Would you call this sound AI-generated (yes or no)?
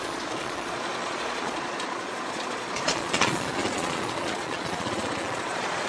yes